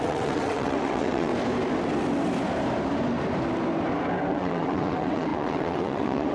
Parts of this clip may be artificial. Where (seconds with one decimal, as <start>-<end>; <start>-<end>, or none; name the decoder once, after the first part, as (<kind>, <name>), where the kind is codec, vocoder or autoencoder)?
0.0-1.3 (vocoder, WaveNeXt); 4.3-6.3